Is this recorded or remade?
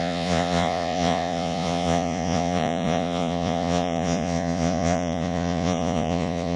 remade